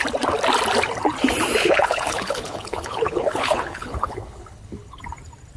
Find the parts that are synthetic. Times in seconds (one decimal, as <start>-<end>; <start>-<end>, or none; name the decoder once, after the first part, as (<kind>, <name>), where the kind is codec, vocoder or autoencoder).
1.6-5.0 (codec, HILCodec)